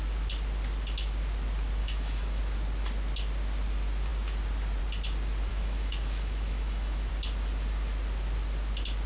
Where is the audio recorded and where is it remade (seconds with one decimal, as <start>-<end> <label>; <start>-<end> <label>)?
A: 0.0-1.8 recorded; 1.8-2.4 remade; 2.4-5.5 recorded; 5.5-7.1 remade; 7.1-9.1 recorded

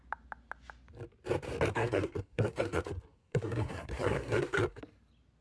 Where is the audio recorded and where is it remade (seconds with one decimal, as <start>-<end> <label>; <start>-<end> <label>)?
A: 0.0-1.7 recorded; 1.7-4.8 remade; 4.8-5.4 recorded

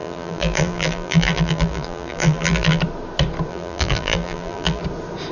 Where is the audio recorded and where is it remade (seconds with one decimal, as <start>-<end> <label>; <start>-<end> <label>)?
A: 0.0-2.8 remade; 2.8-3.5 recorded; 3.5-4.8 remade; 4.8-5.3 recorded

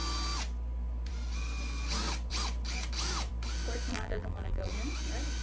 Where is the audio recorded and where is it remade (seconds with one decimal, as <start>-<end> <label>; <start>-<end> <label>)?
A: 0.0-3.9 recorded; 3.9-4.7 remade; 4.7-5.4 recorded

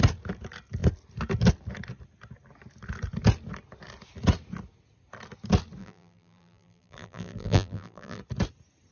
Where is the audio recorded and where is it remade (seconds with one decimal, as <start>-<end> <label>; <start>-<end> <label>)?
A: 0.0-5.8 recorded; 5.8-8.2 remade; 8.2-8.9 recorded

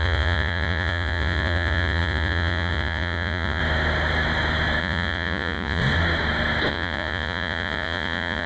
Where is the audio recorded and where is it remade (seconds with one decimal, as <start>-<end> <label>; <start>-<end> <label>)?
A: 0.0-3.6 remade; 3.6-4.8 recorded; 4.8-5.8 remade; 5.8-6.7 recorded; 6.7-8.5 remade